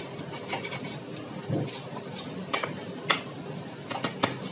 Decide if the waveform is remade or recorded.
recorded